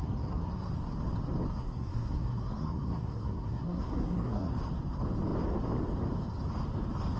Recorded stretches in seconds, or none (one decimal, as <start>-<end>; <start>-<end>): 0.7-1.6; 4.5-7.2